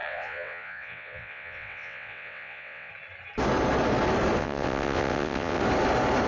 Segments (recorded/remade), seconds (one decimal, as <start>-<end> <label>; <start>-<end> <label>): 0.0-2.9 remade; 2.9-4.4 recorded; 4.4-5.6 remade; 5.6-6.3 recorded